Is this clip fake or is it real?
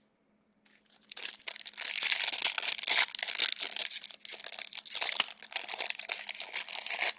real